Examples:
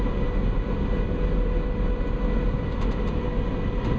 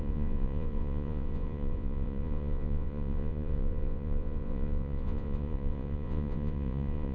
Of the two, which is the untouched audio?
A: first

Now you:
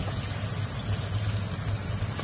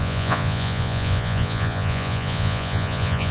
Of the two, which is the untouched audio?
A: first